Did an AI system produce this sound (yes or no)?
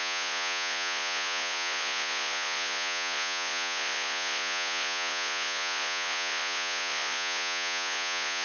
yes